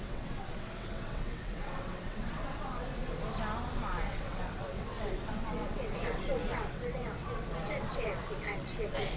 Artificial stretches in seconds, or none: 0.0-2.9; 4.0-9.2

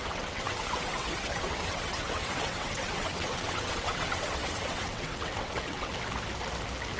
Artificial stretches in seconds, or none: 0.0-5.9

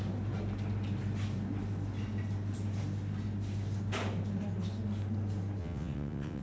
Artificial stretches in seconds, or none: 5.6-6.4

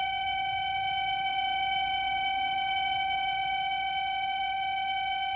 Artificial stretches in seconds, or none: 0.0-5.4